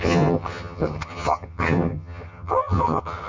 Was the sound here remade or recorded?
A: remade